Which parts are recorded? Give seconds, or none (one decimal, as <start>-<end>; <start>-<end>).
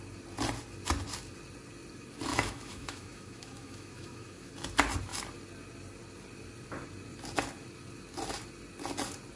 0.0-2.3; 4.5-9.4